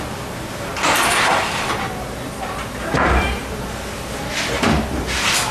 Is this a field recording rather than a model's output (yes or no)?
no